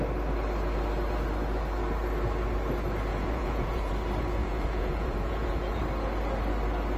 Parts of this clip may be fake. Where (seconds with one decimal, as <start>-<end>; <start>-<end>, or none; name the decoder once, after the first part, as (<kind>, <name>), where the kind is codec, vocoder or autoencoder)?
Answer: 3.1-3.9 (vocoder, Vocos); 4.4-5.8